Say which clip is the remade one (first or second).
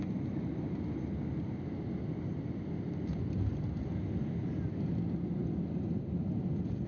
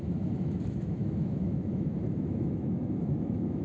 second